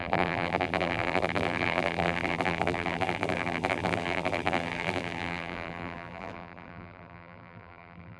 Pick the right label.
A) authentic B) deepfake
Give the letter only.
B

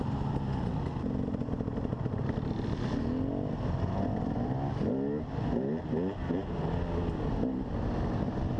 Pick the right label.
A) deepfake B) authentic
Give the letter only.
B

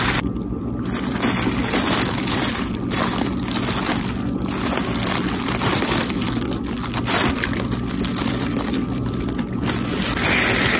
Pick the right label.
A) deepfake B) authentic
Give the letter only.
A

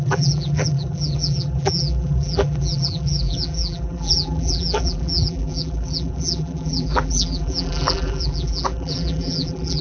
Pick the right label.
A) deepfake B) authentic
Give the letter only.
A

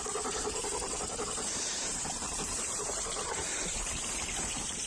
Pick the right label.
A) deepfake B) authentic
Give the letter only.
A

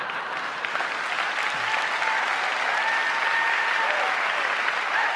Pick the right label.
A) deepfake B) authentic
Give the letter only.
B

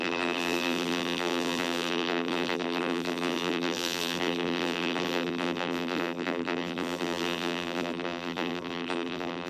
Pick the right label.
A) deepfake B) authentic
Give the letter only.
A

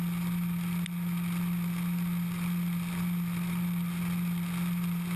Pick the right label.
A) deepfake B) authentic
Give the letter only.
B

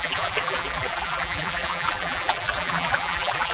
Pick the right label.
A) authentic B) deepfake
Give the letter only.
B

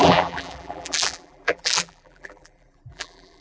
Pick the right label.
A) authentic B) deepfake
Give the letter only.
B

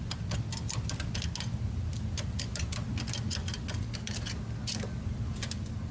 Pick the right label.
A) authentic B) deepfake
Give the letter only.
A